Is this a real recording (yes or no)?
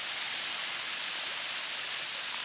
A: yes